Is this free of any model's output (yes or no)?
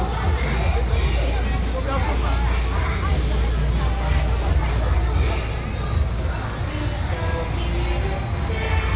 yes